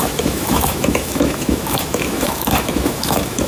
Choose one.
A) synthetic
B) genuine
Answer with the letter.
A